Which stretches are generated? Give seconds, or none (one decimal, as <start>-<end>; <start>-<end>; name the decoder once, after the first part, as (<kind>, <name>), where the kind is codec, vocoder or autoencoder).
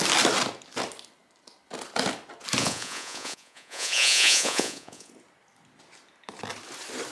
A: 2.6-5.1 (vocoder, Vocos)